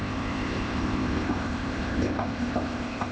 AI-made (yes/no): yes